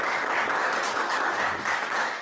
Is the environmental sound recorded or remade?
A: remade